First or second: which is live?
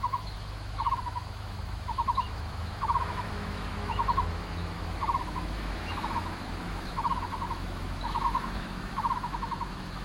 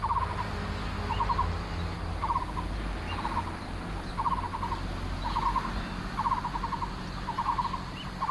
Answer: second